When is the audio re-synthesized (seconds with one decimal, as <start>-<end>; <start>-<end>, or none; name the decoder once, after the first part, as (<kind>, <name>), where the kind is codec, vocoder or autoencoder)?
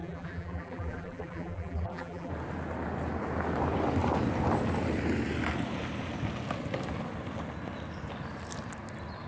0.0-2.3 (vocoder, BigVGAN v2)